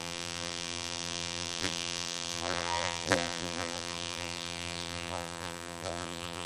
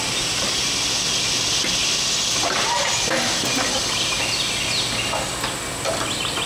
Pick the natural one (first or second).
second